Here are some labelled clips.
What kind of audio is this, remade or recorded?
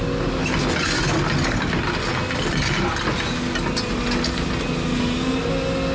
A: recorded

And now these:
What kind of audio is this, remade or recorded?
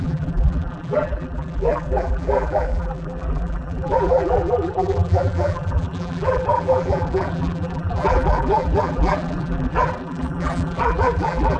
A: remade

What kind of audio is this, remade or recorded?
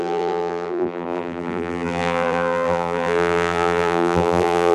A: remade